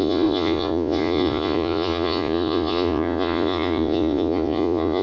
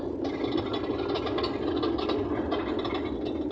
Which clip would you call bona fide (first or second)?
second